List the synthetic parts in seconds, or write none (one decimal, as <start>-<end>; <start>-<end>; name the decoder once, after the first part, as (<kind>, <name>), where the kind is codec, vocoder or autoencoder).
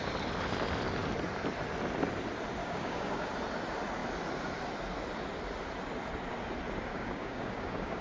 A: 2.6-3.3 (codec, DAC); 6.9-8.0